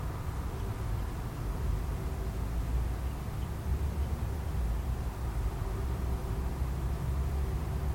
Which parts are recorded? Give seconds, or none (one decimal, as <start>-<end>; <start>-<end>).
0.0-7.9